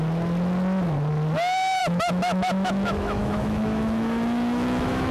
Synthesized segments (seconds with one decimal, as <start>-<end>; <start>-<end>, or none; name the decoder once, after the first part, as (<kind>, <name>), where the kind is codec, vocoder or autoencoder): 1.8-5.1 (autoencoder, DAC-VAE)